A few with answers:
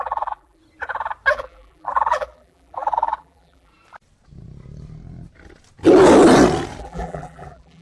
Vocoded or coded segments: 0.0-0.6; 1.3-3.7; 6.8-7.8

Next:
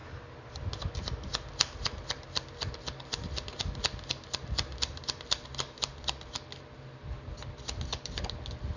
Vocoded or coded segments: 0.0-0.8; 4.7-6.1

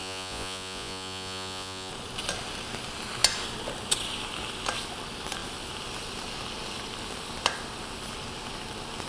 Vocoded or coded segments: 0.0-1.9

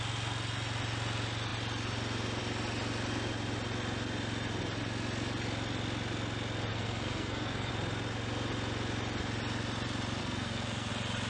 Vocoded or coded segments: 6.7-7.7; 10.2-10.9

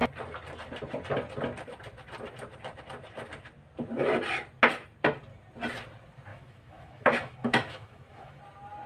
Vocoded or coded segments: 6.3-8.4

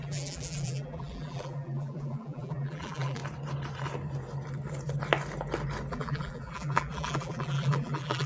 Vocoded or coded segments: 0.0-3.2; 5.9-8.3

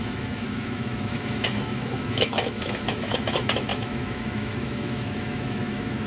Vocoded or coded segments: 0.0-6.1

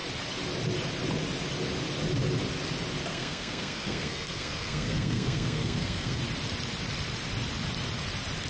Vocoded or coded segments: 3.1-6.2